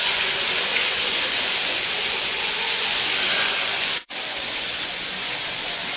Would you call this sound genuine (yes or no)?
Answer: no